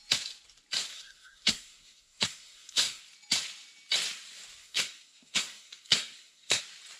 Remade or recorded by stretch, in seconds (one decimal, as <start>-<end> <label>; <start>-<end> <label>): 0.0-0.9 recorded; 0.9-3.0 remade; 3.0-4.6 recorded; 4.6-6.6 remade; 6.6-7.0 recorded